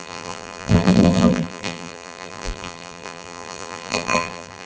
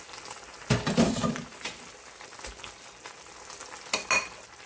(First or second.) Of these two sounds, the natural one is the second